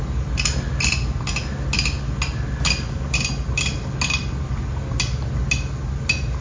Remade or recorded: recorded